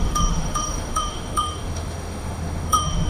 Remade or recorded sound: remade